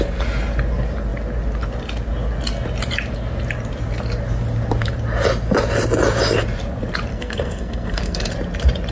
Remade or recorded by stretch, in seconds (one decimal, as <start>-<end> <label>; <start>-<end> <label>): 0.0-7.1 recorded; 7.1-8.3 remade; 8.3-8.9 recorded